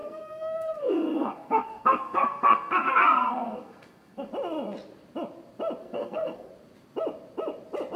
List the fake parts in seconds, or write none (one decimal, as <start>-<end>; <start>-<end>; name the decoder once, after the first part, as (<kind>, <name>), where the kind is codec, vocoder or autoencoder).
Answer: 0.0-4.3 (codec, SNAC); 5.8-6.5